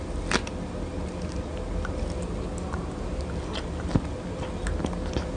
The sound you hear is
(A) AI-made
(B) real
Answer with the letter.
B